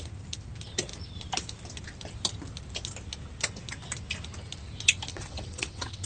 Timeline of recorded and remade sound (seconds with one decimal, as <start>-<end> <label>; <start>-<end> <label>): 0.0-5.1 recorded; 5.1-6.0 remade